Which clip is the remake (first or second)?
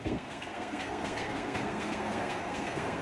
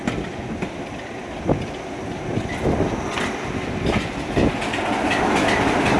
first